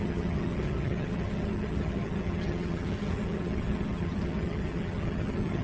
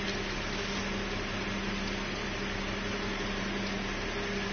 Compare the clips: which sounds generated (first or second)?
first